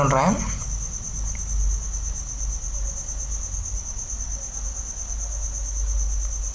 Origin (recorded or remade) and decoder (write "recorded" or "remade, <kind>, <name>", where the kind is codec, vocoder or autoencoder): recorded